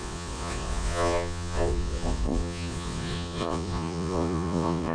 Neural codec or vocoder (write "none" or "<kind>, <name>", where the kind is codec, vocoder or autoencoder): vocoder, Vocos